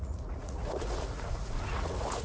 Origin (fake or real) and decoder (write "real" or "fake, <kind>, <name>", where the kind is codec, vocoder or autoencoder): fake, vocoder, Vocos